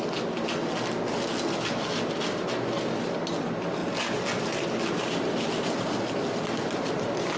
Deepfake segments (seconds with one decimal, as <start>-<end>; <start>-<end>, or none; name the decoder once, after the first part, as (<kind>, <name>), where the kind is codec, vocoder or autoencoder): none